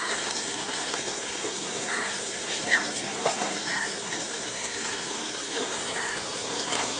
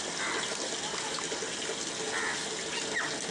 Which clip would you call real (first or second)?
second